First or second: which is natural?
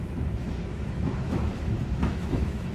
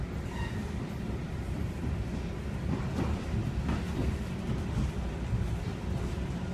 second